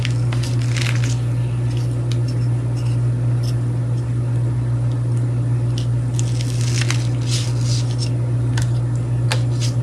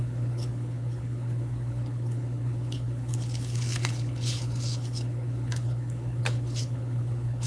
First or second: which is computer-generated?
second